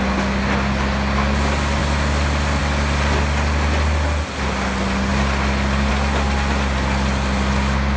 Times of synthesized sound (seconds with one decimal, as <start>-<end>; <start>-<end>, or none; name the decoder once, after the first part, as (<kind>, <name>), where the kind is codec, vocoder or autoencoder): none